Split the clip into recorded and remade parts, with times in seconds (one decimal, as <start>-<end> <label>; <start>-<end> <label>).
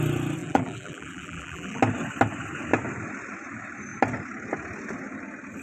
0.0-0.4 recorded; 0.4-1.8 remade; 1.8-5.6 recorded